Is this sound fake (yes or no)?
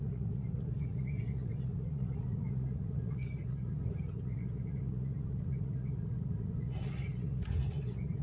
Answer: yes